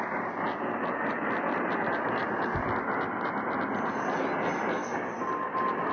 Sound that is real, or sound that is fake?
real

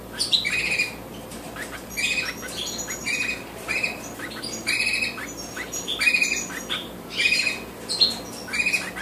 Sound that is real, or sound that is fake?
real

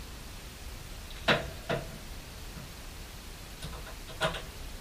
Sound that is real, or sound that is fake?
real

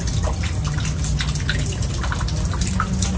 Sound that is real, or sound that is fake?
real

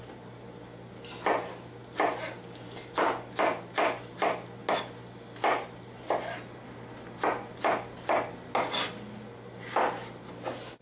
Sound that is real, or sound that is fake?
real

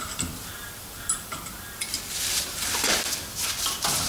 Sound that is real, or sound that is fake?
fake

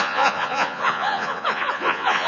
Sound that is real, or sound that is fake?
fake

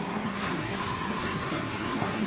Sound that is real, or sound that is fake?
fake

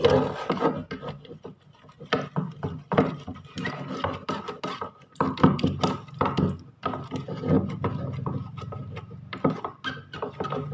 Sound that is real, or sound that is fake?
real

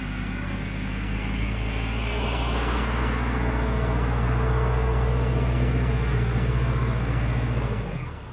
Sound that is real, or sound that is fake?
fake